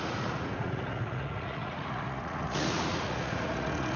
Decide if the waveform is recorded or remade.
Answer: remade